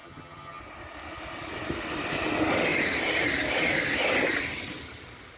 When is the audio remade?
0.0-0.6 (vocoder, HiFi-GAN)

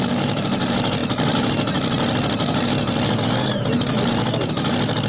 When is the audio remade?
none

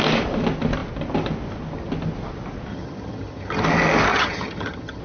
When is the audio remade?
2.7-3.6 (vocoder, HiFi-GAN); 4.1-5.0

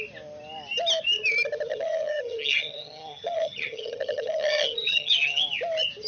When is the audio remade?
1.7-5.4 (vocoder, HiFi-GAN)

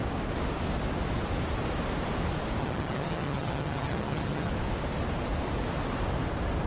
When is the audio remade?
2.6-4.5 (vocoder, HiFi-GAN)

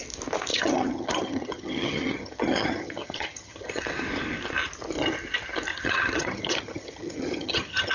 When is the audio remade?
0.5-3.8 (vocoder, HiFi-GAN); 5.7-7.9

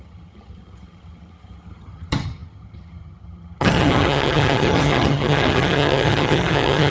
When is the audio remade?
0.0-6.9 (vocoder, HiFi-GAN)

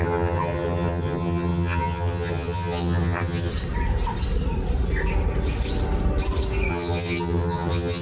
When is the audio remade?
0.0-3.5 (vocoder, HiFi-GAN); 6.7-8.0